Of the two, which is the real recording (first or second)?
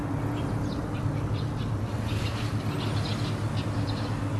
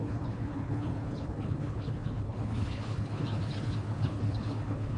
first